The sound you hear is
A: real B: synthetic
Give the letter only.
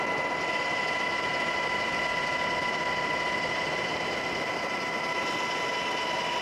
A